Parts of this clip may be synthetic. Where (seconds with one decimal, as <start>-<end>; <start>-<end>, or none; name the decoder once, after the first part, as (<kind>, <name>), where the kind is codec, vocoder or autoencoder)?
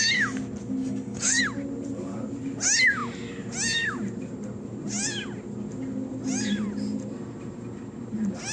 0.8-1.4 (codec, DAC)